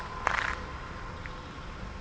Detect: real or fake real